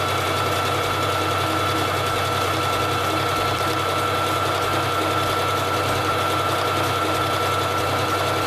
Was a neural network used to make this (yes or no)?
no